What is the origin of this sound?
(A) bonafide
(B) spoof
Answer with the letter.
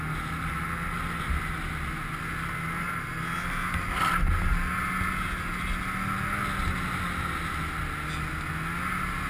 A